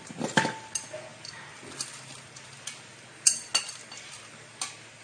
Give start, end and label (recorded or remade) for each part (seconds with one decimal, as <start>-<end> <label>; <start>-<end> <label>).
0.0-5.0 recorded